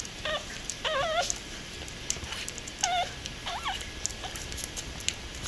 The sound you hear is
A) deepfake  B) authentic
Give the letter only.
B